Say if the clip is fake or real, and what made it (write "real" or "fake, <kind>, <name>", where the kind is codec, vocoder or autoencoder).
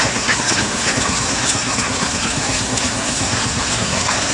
fake, codec, SNAC